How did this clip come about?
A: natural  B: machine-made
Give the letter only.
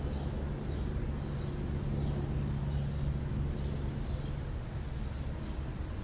A